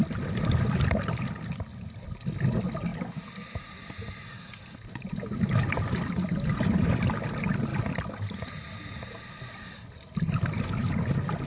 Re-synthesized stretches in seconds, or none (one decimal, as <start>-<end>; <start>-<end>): none